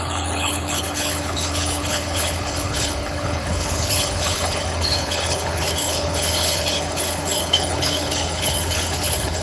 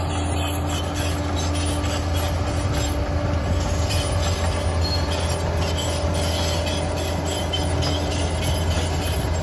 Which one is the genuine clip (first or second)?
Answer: second